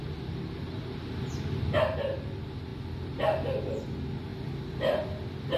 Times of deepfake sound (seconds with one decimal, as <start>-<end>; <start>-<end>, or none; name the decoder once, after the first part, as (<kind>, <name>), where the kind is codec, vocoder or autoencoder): none